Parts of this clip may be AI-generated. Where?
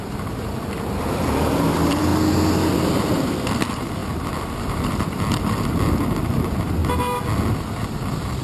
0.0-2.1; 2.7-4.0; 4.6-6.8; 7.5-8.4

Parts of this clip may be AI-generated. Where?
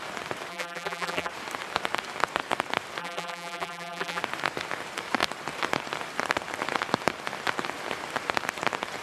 0.5-1.3; 3.0-4.2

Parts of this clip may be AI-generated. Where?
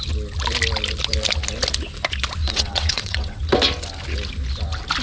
2.4-3.4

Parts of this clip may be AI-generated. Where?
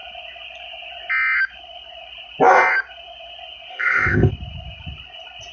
3.7-4.3